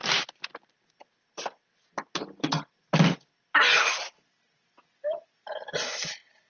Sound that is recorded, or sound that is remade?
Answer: recorded